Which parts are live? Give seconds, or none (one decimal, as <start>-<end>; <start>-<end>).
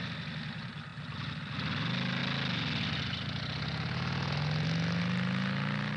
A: 0.0-6.0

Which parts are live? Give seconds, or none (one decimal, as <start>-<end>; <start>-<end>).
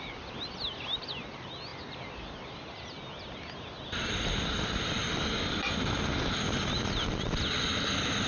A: 0.0-8.3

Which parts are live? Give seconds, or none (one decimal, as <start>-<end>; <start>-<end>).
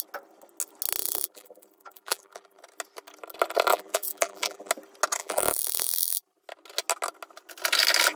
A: 0.0-1.0; 2.6-3.7; 4.7-5.2; 6.4-8.2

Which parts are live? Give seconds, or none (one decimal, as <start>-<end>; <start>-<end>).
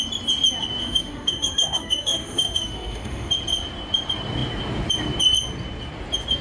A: 0.0-0.8; 3.3-6.4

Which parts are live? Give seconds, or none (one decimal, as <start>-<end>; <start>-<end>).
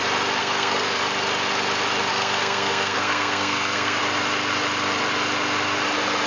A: 0.0-0.4; 1.0-2.1; 4.0-6.3